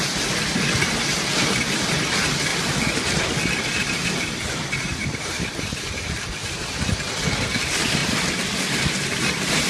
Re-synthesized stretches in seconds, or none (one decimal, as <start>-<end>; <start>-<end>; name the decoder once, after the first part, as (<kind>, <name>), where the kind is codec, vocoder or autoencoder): 0.0-6.4 (vocoder, BigVGAN v2); 7.0-8.0; 8.8-9.7